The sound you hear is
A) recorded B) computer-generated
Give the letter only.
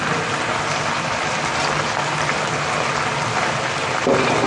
A